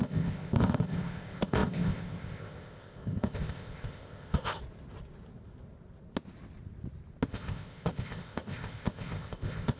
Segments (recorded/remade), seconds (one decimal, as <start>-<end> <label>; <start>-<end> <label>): 0.0-4.6 remade; 4.6-7.3 recorded; 7.3-9.8 remade

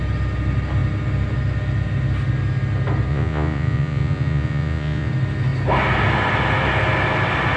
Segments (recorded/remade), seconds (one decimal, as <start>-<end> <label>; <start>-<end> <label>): 0.0-3.1 recorded; 3.1-5.1 remade; 5.1-7.6 recorded

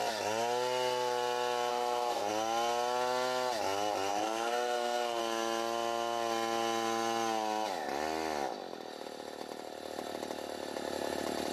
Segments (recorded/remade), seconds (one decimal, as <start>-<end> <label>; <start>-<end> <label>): 0.0-1.7 recorded; 1.7-2.3 remade; 2.3-4.1 recorded; 4.1-5.2 remade; 5.2-11.5 recorded

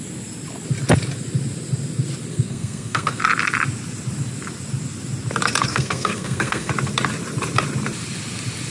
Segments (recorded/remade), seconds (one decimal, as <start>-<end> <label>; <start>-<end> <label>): 0.0-2.3 recorded; 2.3-3.2 remade; 3.2-5.7 recorded; 5.7-6.7 remade; 6.7-8.7 recorded

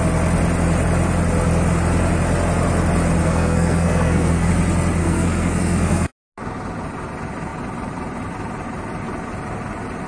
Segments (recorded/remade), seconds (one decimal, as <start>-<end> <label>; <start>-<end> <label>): 0.0-3.2 recorded; 3.2-4.5 remade; 4.5-5.0 recorded; 5.0-6.1 remade; 6.1-10.1 recorded

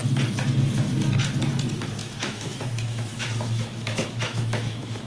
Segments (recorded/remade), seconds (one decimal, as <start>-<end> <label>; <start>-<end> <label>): 0.0-2.0 recorded; 2.0-5.1 remade